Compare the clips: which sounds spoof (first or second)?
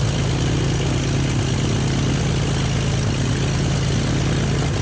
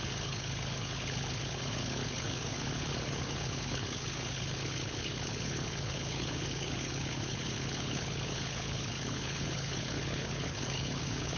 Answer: second